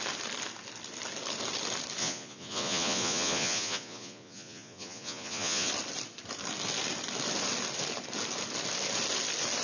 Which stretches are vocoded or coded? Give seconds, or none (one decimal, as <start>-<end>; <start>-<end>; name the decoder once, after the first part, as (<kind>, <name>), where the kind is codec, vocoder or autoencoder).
2.0-5.7 (vocoder, Vocos)

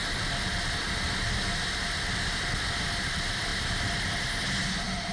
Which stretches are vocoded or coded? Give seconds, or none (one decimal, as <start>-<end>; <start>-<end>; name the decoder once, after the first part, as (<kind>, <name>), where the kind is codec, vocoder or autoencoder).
none

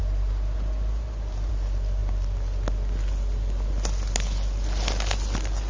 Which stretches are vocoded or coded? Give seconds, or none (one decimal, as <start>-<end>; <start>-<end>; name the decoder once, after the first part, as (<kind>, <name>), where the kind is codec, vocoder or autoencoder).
none

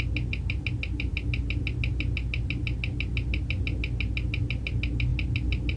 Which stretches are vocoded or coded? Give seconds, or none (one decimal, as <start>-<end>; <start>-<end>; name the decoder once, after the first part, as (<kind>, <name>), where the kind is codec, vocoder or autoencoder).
none